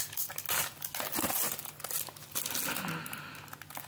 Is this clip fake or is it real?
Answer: real